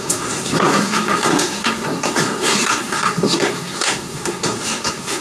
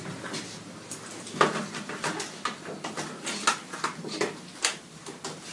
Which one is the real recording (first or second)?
second